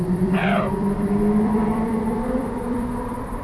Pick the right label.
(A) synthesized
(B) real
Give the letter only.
A